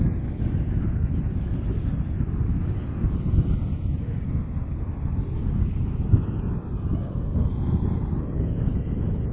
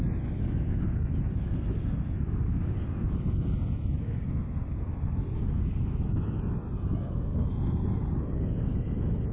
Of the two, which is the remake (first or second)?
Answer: first